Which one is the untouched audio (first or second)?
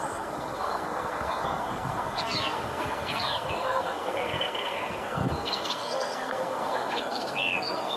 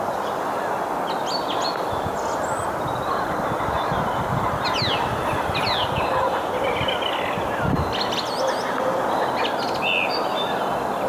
second